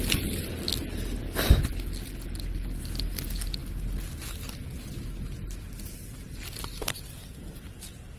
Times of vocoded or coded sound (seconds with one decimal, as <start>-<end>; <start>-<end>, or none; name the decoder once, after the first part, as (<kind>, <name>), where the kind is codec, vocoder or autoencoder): none